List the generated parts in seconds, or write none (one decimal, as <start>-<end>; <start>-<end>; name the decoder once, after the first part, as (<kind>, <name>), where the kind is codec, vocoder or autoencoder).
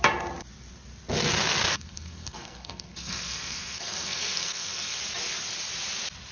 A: 1.7-5.0 (codec, SNAC)